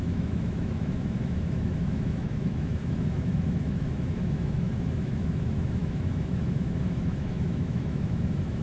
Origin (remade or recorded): remade